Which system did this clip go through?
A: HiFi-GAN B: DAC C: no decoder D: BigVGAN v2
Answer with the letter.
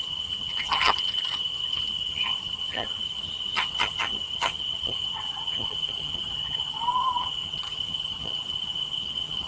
A